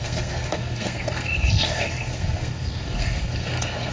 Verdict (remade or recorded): remade